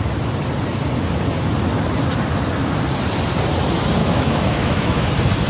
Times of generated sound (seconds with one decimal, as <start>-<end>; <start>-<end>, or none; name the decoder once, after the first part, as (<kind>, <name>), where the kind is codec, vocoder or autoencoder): 4.0-5.1 (autoencoder, DAC-VAE)